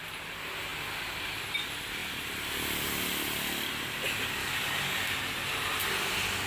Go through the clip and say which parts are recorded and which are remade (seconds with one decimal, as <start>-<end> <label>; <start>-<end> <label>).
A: 0.0-4.4 recorded; 4.4-5.1 remade; 5.1-6.5 recorded